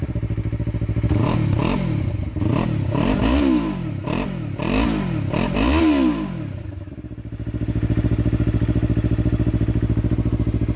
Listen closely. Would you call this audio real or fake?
real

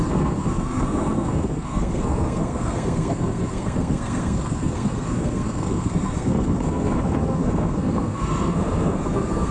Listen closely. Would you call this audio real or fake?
fake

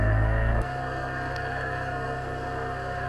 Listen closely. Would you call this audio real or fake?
fake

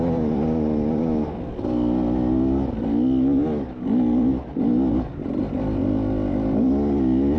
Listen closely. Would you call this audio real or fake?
real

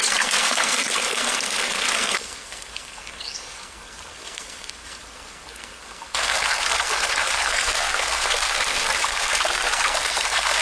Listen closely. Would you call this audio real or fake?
fake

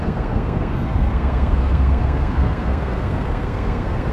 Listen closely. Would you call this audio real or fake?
fake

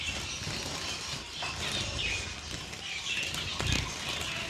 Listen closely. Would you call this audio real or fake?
real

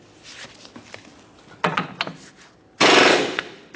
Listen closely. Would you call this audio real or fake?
real